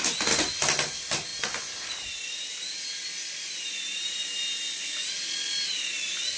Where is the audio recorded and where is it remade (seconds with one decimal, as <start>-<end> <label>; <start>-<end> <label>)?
0.0-6.4 recorded